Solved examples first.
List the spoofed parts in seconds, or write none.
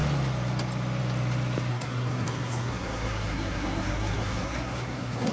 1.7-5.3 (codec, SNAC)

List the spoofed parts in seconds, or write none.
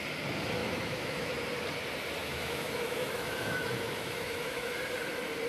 0.6-1.3 (autoencoder, DAC-VAE); 2.2-4.7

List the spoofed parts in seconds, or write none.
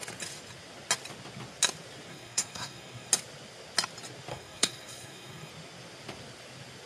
2.1-3.1 (codec, SNAC); 4.3-5.5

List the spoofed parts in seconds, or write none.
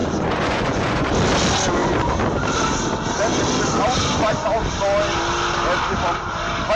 0.0-1.1 (vocoder, Vocos)